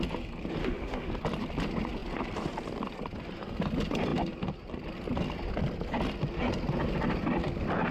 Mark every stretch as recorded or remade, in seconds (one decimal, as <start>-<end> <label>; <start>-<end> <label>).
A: 0.0-0.6 recorded; 0.6-1.1 remade; 1.1-7.9 recorded

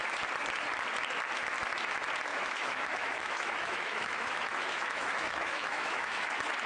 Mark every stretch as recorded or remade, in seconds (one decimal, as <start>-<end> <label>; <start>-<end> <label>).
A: 0.0-2.3 recorded; 2.3-6.3 remade; 6.3-6.7 recorded

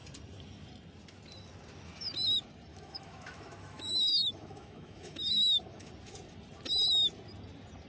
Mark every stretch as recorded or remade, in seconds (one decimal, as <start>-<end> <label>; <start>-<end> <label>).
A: 0.0-2.7 recorded; 2.7-5.9 remade; 5.9-7.9 recorded

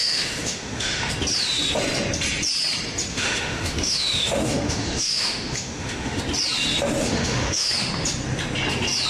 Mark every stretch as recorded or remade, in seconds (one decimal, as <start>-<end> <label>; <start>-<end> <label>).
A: 0.0-1.1 remade; 1.1-3.1 recorded; 3.1-6.2 remade; 6.2-7.0 recorded; 7.0-7.7 remade; 7.7-9.1 recorded